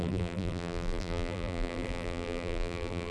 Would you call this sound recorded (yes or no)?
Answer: no